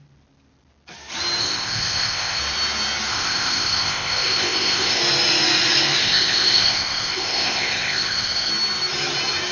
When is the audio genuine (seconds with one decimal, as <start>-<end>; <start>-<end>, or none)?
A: 0.0-1.4; 2.4-3.1; 5.0-6.0; 8.5-9.5